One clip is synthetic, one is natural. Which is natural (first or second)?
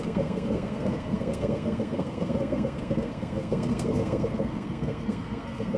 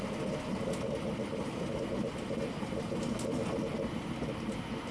second